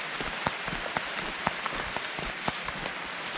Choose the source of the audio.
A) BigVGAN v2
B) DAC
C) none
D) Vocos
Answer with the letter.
C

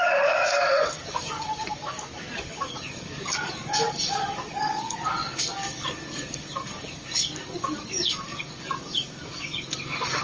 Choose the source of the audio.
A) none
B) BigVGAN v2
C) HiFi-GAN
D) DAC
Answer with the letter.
D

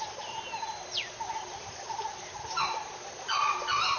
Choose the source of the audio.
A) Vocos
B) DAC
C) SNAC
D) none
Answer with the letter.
D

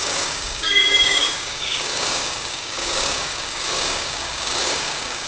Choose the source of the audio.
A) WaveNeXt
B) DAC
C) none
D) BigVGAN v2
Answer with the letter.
B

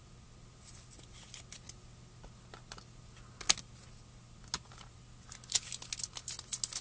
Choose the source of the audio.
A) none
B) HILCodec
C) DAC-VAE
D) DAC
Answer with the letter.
A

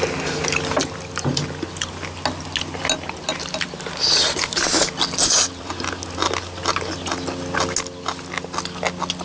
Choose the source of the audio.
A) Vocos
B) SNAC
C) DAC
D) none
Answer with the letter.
D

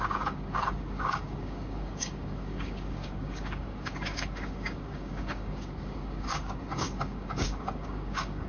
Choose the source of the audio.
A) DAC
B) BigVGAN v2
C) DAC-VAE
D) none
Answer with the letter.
A